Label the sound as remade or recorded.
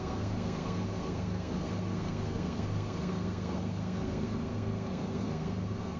remade